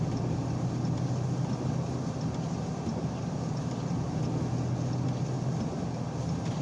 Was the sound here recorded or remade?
recorded